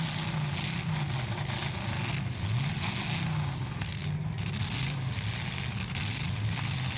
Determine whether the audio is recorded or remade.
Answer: recorded